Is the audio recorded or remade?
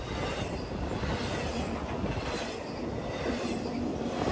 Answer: recorded